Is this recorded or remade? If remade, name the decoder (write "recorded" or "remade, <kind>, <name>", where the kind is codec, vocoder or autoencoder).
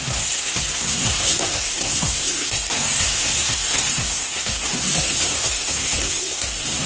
remade, codec, SNAC